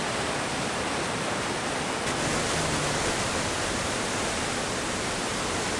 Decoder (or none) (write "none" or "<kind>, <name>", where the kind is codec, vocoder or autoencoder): none